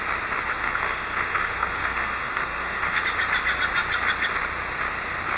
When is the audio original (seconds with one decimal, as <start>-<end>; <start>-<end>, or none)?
0.0-0.5; 3.0-5.4